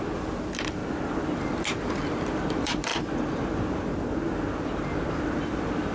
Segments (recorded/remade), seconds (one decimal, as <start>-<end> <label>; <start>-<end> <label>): 0.0-0.8 remade; 0.8-1.4 recorded; 1.4-2.9 remade; 2.9-5.1 recorded; 5.1-5.9 remade